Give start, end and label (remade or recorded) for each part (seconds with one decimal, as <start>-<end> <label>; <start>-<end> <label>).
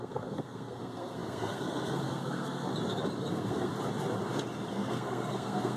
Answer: 0.0-2.7 remade; 2.7-3.3 recorded; 3.3-3.7 remade; 3.7-4.7 recorded; 4.7-5.8 remade